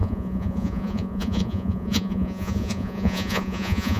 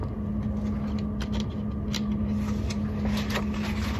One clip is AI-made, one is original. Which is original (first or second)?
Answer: second